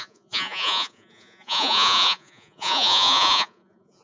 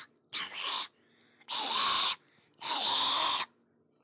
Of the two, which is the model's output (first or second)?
first